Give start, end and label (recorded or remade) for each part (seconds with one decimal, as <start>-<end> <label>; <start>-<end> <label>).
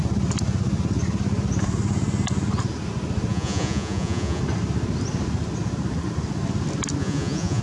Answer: 0.0-3.3 recorded; 3.3-4.4 remade; 4.4-7.0 recorded; 7.0-7.6 remade